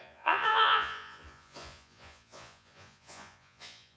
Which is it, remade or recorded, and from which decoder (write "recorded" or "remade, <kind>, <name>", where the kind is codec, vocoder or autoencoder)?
remade, vocoder, Vocos